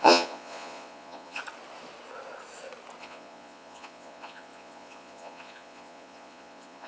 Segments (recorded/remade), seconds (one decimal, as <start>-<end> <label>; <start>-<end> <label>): 0.0-1.4 remade; 1.4-3.0 recorded; 3.0-6.9 remade